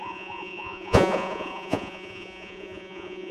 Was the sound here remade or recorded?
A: remade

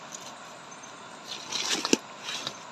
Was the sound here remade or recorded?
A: recorded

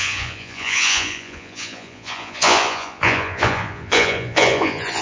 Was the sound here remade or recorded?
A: remade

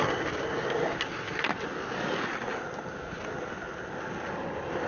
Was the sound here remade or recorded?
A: recorded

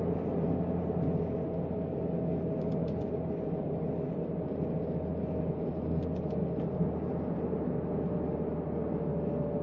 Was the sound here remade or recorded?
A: recorded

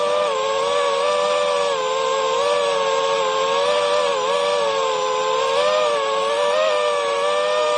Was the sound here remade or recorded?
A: recorded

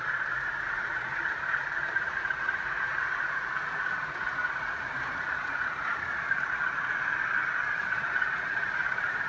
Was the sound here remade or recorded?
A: remade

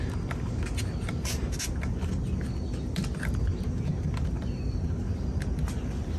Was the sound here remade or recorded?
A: recorded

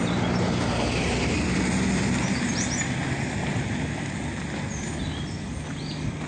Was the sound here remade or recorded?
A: recorded